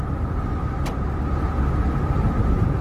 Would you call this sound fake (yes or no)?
yes